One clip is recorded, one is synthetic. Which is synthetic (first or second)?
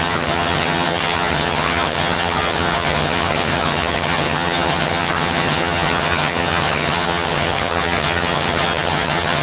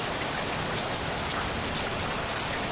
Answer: first